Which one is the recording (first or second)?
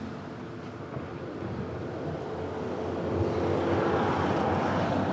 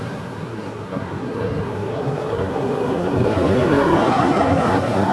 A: first